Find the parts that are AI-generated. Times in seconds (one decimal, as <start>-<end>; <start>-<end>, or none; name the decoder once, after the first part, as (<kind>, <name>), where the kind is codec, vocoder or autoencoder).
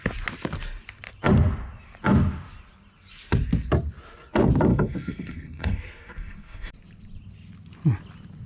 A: 4.7-6.7 (codec, SNAC)